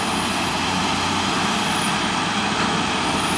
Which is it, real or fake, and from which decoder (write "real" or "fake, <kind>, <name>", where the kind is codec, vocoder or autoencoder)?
real